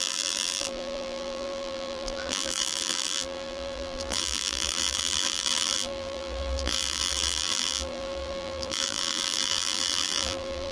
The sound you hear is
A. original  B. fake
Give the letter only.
B